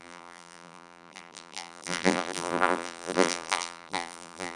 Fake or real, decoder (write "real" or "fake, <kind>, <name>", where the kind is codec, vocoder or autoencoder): fake, vocoder, BigVGAN v2